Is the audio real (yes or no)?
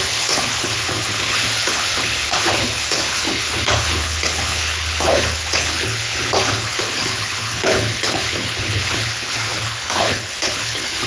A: no